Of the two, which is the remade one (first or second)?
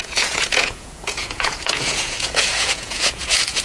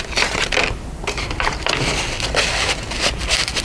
first